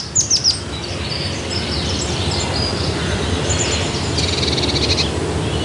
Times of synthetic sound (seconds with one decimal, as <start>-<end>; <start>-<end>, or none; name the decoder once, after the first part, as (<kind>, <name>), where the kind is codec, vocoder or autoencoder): 2.7-3.2 (vocoder, Vocos)